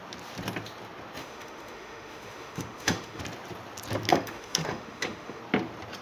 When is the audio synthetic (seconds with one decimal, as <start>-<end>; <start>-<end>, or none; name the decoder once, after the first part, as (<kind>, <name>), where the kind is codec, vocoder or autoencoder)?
1.2-3.2 (autoencoder, DAC-VAE); 4.1-5.4